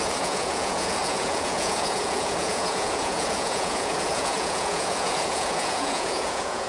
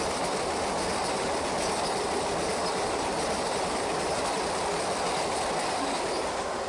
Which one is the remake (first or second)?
first